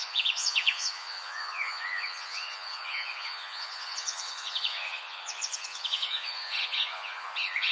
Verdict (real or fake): fake